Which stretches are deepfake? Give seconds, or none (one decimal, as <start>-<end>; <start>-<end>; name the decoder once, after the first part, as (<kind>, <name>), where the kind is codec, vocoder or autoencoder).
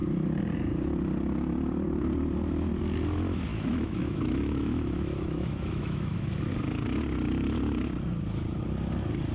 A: 3.5-6.5 (autoencoder, DAC-VAE)